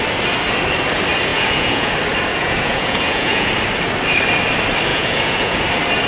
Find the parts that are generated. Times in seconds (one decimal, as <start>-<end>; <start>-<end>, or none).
1.3-1.9; 2.3-3.5; 4.9-5.6